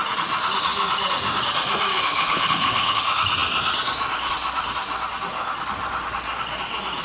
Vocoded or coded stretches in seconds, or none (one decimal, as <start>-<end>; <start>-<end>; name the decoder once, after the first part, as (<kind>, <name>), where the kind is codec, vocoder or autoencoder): 1.9-3.0 (codec, HILCodec)